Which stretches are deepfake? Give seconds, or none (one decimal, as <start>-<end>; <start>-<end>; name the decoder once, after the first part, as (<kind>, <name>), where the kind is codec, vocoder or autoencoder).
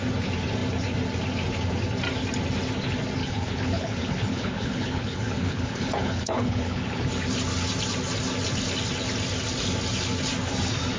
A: 3.2-7.0 (codec, HILCodec)